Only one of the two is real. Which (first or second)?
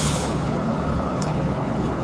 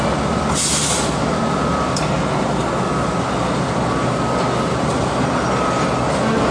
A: second